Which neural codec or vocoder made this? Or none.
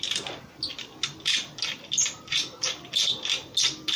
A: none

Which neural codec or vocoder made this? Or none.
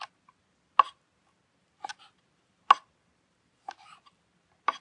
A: none